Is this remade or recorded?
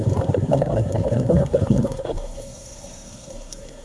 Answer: remade